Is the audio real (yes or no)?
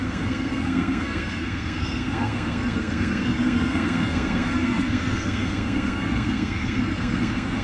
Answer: no